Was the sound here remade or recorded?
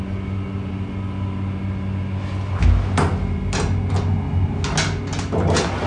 recorded